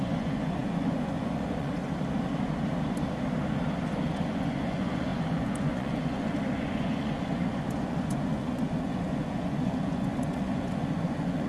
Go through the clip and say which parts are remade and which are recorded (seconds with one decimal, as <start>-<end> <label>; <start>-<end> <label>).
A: 0.0-1.8 remade; 1.8-4.1 recorded; 4.1-11.5 remade